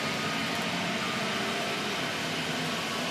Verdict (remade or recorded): recorded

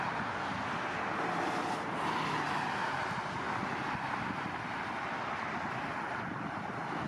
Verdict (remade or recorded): recorded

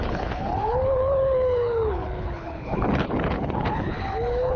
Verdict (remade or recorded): remade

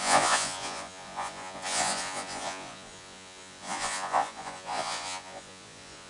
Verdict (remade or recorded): remade